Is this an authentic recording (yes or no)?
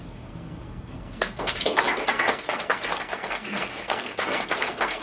no